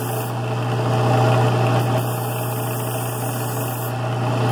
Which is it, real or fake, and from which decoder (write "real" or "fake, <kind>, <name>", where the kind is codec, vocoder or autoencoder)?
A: real